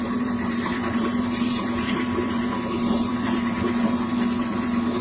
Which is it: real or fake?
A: fake